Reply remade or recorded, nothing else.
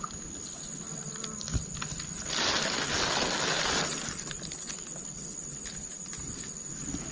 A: recorded